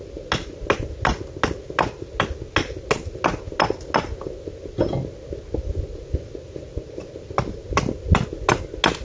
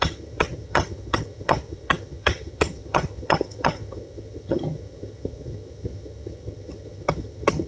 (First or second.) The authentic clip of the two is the first